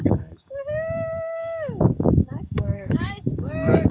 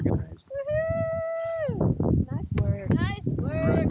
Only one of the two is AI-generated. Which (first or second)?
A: first